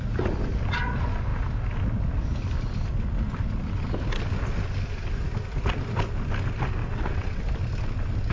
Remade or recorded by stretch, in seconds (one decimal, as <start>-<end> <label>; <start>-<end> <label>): 0.0-6.8 recorded; 6.8-7.4 remade; 7.4-8.3 recorded